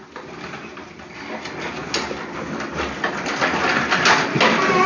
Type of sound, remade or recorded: recorded